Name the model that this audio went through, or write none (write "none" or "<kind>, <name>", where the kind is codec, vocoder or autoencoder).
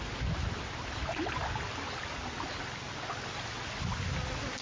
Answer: none